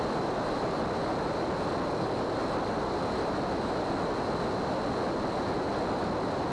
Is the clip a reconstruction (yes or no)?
no